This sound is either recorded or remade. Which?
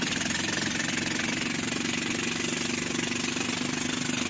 recorded